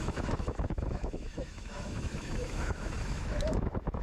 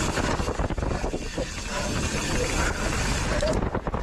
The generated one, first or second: first